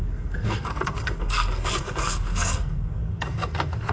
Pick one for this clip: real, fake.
fake